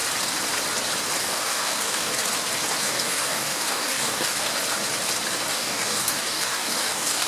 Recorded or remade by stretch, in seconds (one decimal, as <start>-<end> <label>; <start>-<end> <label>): 0.0-1.2 recorded; 1.2-2.1 remade; 2.1-2.8 recorded; 2.8-4.5 remade; 4.5-5.5 recorded; 5.5-7.3 remade